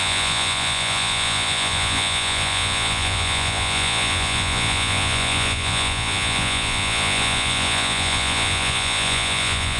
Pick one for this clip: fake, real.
fake